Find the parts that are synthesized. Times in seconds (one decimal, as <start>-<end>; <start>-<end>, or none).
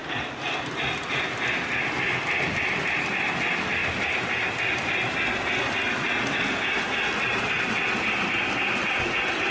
none